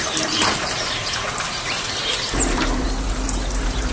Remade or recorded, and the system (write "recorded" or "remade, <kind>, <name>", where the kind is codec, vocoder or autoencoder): remade, vocoder, BigVGAN v2